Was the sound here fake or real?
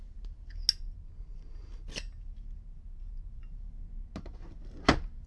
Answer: real